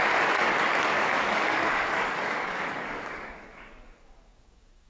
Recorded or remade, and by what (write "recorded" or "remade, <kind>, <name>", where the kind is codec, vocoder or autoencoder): remade, codec, DAC